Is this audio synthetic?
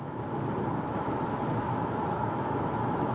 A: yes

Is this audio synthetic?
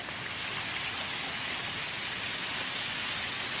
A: no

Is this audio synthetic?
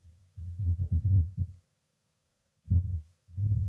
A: yes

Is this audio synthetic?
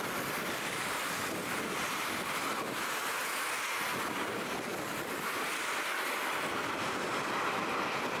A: yes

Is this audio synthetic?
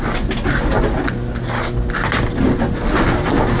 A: no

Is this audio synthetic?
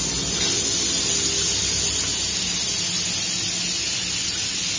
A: no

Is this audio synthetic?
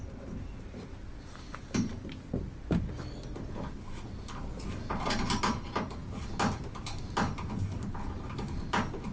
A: no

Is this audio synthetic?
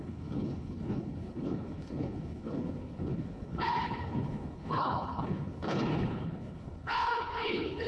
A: yes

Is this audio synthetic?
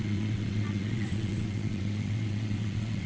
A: yes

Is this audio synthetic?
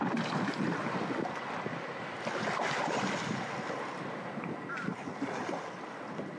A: no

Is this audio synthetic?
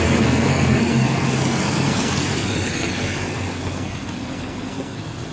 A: yes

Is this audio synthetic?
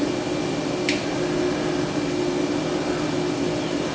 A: no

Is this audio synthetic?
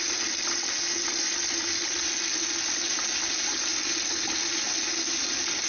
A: no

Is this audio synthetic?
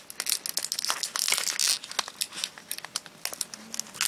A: no